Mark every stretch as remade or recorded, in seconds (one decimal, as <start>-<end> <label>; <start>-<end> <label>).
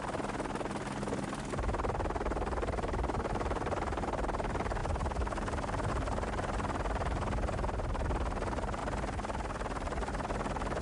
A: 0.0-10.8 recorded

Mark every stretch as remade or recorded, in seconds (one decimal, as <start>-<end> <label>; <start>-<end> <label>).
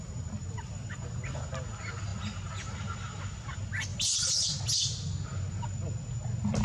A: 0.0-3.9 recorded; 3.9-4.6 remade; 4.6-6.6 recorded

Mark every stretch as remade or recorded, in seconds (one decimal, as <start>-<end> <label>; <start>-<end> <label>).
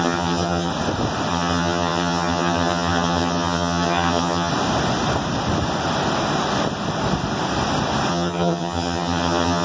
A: 0.0-0.7 remade; 0.7-1.3 recorded; 1.3-4.5 remade; 4.5-8.1 recorded; 8.1-9.6 remade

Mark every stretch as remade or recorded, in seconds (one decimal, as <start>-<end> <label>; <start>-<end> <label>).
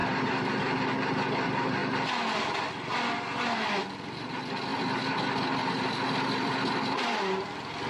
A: 0.0-0.6 remade; 0.6-4.7 recorded; 4.7-7.2 remade; 7.2-7.9 recorded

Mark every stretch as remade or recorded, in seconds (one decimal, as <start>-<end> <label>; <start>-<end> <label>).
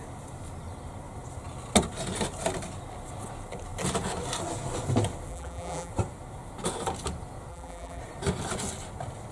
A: 0.0-5.3 recorded; 5.3-5.9 remade; 5.9-7.5 recorded; 7.5-8.0 remade; 8.0-9.3 recorded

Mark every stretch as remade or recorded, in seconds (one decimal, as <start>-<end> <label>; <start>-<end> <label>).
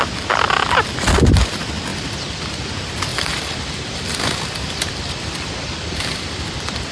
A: 0.0-1.9 recorded; 1.9-2.7 remade; 2.7-3.1 recorded; 3.1-6.9 remade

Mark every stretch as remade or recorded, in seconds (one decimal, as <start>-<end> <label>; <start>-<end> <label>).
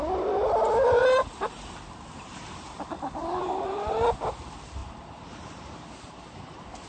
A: 0.0-1.0 recorded; 1.0-4.0 remade; 4.0-4.8 recorded; 4.8-6.9 remade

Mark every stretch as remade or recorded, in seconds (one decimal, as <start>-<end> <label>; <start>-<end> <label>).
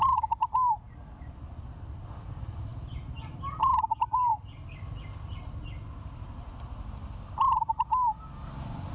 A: 0.0-2.7 recorded; 2.7-3.4 remade; 3.4-8.9 recorded